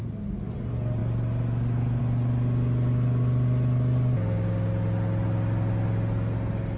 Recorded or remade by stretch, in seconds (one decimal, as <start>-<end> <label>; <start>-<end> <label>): 0.0-6.8 recorded

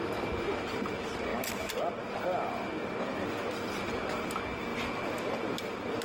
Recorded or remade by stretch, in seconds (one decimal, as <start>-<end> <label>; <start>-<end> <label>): 0.0-4.7 recorded; 4.7-6.0 remade

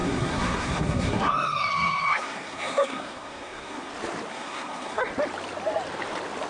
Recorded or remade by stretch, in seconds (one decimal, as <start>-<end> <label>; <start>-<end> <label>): 0.0-3.9 remade; 3.9-4.3 recorded; 4.3-5.0 remade; 5.0-6.5 recorded

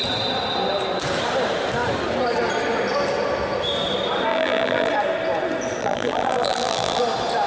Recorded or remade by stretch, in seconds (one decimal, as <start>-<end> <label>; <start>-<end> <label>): 0.0-4.3 recorded; 4.3-4.9 remade; 4.9-5.8 recorded; 5.8-7.0 remade; 7.0-7.5 recorded

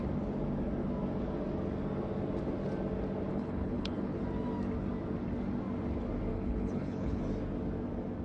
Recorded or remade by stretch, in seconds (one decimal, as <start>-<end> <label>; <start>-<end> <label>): 0.0-3.3 recorded; 3.3-4.2 remade; 4.2-6.3 recorded; 6.3-7.2 remade; 7.2-8.2 recorded

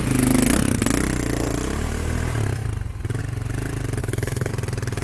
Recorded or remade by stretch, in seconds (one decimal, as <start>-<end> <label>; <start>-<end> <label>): 0.0-4.0 recorded; 4.0-4.5 remade; 4.5-5.0 recorded

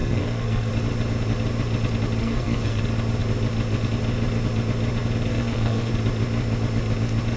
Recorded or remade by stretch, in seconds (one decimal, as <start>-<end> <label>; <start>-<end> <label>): 0.0-0.7 remade; 0.7-2.2 recorded; 2.2-2.8 remade; 2.8-5.3 recorded; 5.3-5.9 remade; 5.9-7.4 recorded

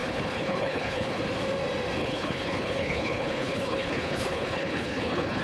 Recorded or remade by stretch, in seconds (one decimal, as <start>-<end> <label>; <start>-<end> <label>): 0.0-1.2 remade; 1.2-2.0 recorded; 2.0-5.4 remade